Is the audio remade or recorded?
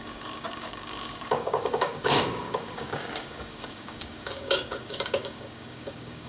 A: remade